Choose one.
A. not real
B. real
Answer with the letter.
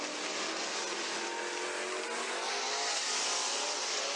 B